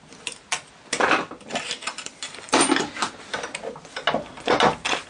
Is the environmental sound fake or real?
real